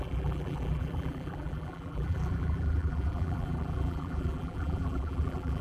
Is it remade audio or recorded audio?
remade